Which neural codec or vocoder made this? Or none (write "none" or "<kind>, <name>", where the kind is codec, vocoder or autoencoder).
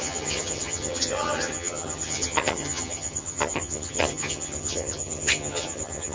vocoder, HiFi-GAN